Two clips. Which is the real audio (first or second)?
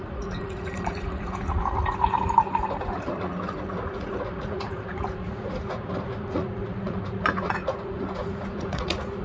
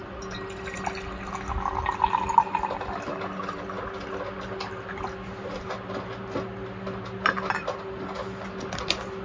second